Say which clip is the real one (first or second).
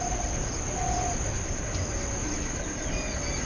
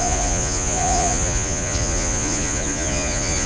first